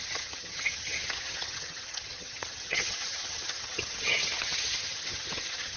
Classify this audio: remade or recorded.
remade